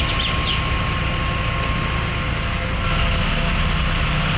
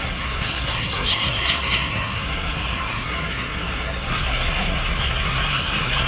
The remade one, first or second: second